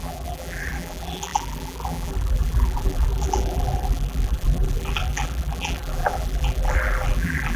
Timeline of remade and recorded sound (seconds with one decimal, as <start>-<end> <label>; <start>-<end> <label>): 0.0-7.6 remade